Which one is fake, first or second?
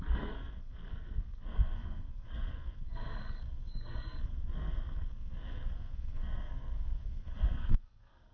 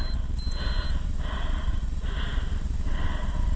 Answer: first